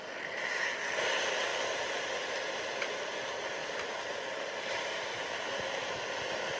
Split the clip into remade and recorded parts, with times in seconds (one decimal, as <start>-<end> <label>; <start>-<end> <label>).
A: 0.0-6.6 recorded